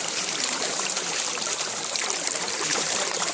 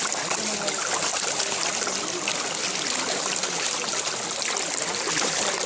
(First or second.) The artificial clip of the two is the first